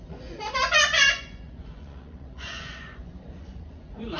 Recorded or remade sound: remade